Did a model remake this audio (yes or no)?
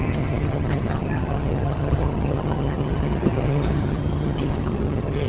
yes